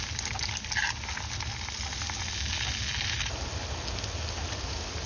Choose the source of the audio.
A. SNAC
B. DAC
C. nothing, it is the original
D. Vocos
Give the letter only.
C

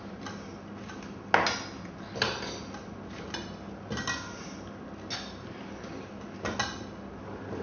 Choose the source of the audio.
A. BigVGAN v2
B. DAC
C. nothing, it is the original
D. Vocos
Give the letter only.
C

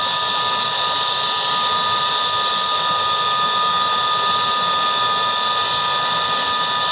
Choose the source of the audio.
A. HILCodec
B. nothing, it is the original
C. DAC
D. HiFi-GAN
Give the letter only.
B